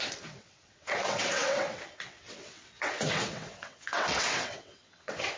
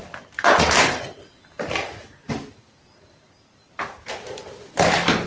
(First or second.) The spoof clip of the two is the first